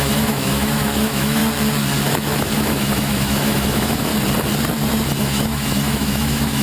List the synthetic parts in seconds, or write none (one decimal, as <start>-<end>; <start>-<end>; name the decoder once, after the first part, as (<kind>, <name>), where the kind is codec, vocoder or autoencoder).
0.0-1.4 (autoencoder, DAC-VAE); 2.1-4.1; 5.2-6.6